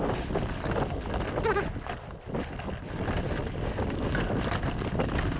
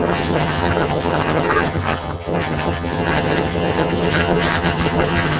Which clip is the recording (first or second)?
first